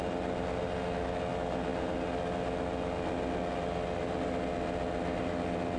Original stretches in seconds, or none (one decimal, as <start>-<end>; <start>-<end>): 0.0-5.8